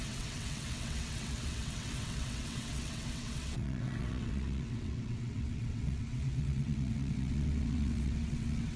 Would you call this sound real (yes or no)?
no